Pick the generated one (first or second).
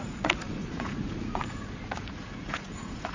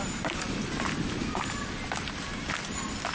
first